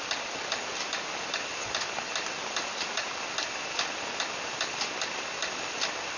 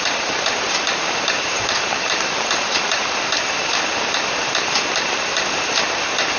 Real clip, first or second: first